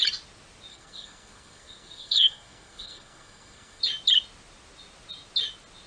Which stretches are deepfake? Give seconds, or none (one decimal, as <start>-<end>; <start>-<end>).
0.7-3.8